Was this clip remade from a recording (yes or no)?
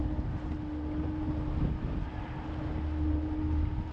no